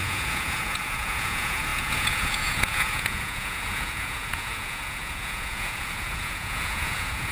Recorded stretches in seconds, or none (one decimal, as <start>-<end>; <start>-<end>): none